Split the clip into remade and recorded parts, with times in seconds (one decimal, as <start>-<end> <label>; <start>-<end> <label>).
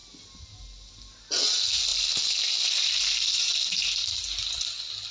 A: 0.0-5.1 recorded